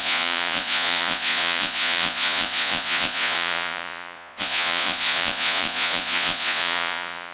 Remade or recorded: remade